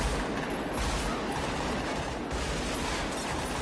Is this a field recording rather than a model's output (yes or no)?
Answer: yes